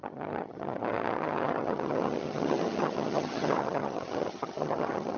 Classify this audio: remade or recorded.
remade